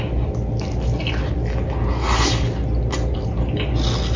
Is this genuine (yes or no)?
yes